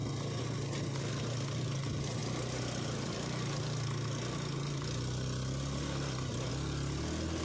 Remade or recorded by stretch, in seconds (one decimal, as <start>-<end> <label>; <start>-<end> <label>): 0.0-7.4 recorded